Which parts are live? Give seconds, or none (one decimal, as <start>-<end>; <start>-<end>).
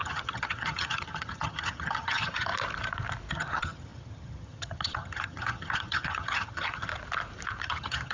2.5-3.3; 6.9-7.6